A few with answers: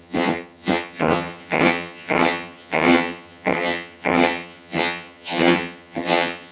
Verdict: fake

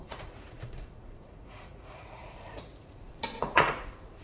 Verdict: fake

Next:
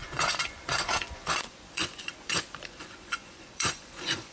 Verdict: fake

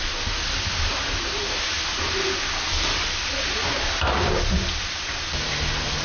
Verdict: real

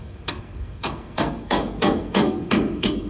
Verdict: fake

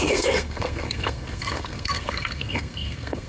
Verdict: fake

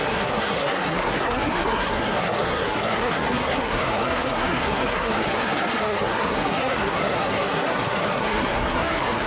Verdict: fake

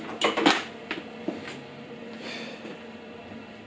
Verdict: real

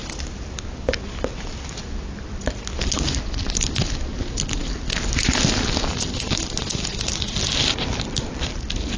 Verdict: real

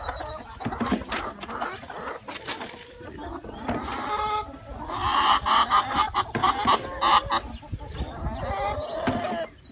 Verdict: real